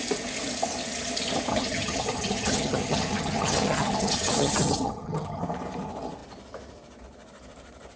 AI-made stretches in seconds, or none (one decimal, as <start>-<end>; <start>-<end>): 1.5-5.4